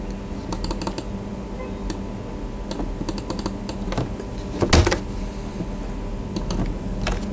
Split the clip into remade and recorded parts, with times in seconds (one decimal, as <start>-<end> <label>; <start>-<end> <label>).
0.0-7.3 recorded